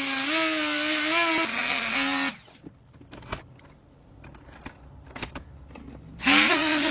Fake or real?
real